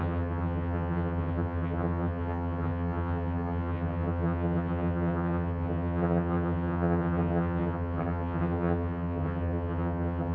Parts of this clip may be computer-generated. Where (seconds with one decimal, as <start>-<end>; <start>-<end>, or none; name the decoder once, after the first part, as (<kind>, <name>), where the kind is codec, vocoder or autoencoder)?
0.0-10.3 (vocoder, HiFi-GAN)